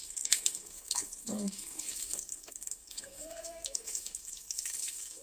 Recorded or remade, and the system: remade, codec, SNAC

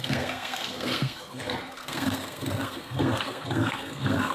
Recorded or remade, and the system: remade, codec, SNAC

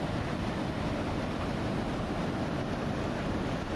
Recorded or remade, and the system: recorded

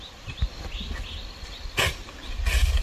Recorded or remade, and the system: recorded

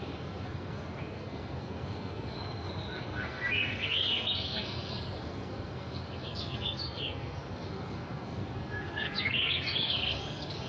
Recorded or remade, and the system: remade, codec, SNAC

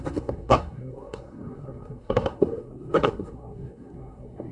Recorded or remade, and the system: remade, codec, SNAC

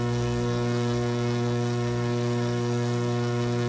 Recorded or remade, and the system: remade, codec, SNAC